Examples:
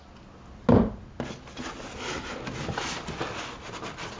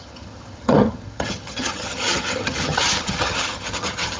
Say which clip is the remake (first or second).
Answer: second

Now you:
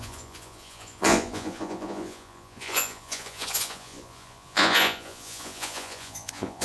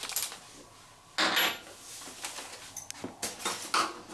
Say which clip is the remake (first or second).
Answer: first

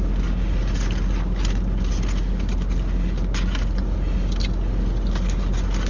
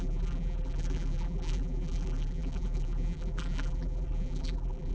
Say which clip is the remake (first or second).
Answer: second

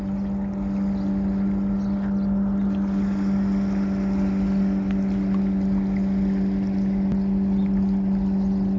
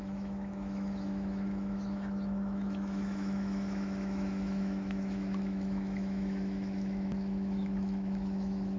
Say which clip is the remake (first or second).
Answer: second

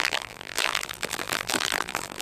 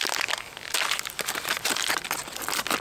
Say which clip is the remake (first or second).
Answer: first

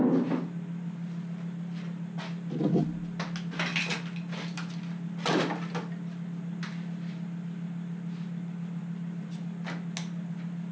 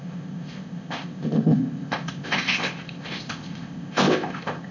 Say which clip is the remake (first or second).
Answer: second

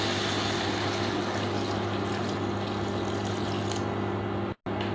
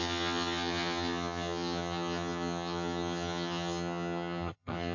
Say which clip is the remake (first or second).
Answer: second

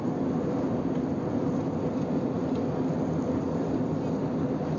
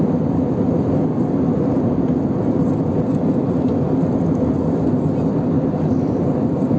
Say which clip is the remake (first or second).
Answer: second